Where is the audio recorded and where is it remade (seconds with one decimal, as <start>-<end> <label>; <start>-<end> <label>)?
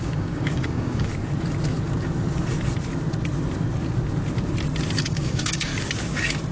0.0-1.1 remade; 1.1-5.0 recorded; 5.0-5.7 remade; 5.7-6.5 recorded